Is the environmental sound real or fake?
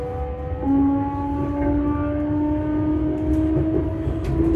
real